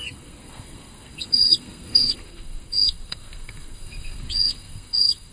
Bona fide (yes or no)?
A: no